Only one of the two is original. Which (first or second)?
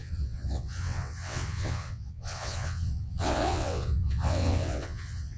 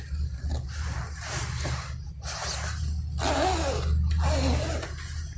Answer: second